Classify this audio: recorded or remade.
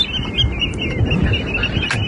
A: recorded